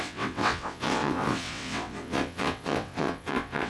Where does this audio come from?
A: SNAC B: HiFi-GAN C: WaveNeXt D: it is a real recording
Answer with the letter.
C